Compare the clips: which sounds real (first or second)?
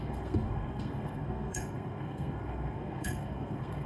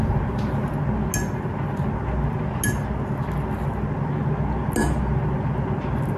second